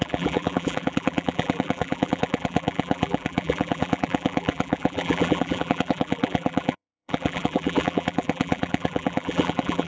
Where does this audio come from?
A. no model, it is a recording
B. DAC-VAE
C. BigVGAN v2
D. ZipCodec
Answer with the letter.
C